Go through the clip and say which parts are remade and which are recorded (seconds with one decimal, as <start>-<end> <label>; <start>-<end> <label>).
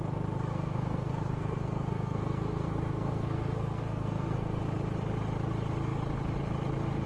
0.0-0.5 recorded; 0.5-4.6 remade; 4.6-7.1 recorded